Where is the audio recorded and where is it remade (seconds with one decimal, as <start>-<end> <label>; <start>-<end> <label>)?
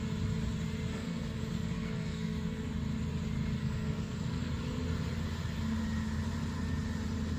0.0-0.9 recorded; 0.9-2.7 remade; 2.7-3.6 recorded; 3.6-4.5 remade; 4.5-7.4 recorded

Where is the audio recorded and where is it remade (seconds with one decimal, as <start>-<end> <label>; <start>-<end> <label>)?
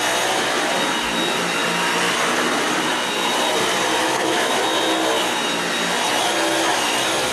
0.0-4.0 recorded; 4.0-4.6 remade; 4.6-7.3 recorded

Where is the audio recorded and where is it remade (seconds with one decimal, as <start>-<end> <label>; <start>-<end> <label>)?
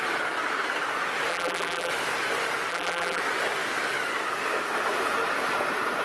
0.0-1.3 recorded; 1.3-1.9 remade; 1.9-2.7 recorded; 2.7-3.2 remade; 3.2-6.0 recorded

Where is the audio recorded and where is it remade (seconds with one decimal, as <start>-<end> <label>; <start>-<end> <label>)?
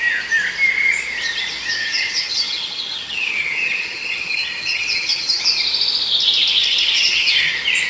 0.0-1.8 recorded; 1.8-5.4 remade; 5.4-6.6 recorded; 6.6-7.5 remade; 7.5-7.9 recorded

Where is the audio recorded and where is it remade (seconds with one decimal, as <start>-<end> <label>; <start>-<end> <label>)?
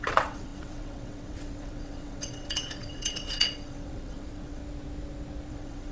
0.0-4.6 remade; 4.6-5.5 recorded; 5.5-5.9 remade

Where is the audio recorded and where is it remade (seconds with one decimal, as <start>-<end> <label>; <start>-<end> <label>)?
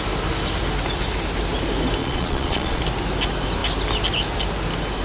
0.0-2.0 recorded; 2.0-2.8 remade; 2.8-5.0 recorded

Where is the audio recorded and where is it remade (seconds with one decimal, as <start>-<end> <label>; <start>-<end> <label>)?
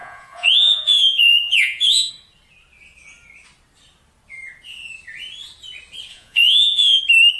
0.0-2.1 remade; 2.1-6.1 recorded; 6.1-7.0 remade; 7.0-7.4 recorded